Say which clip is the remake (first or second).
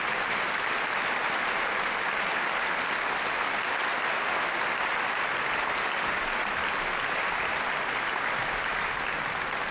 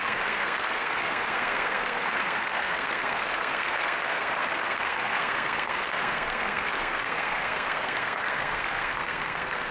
second